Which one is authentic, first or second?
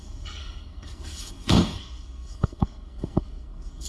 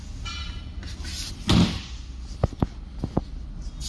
second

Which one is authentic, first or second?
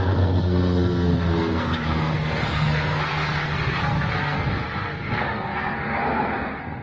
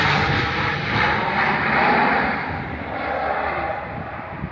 second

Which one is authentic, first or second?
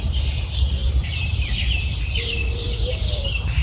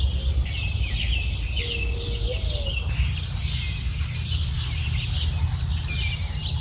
second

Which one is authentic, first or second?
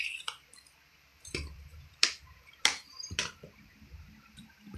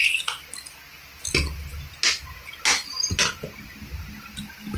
second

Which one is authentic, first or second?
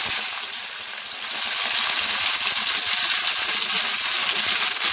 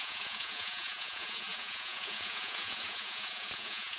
first